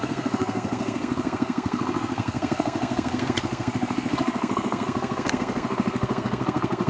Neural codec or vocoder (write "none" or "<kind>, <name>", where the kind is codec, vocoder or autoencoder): codec, SNAC